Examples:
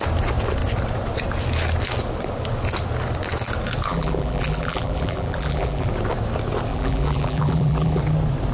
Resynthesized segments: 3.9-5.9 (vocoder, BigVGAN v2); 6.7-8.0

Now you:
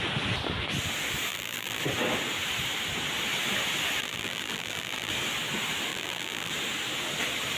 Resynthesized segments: 1.3-1.8 (vocoder, BigVGAN v2); 4.0-5.1; 5.9-6.5

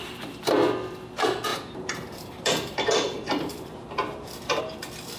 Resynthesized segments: 1.5-4.6 (vocoder, BigVGAN v2)

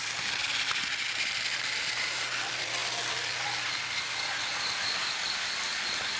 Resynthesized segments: 0.0-6.2 (vocoder, BigVGAN v2)